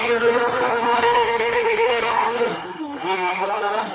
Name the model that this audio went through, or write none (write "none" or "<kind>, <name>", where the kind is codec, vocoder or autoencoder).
codec, SNAC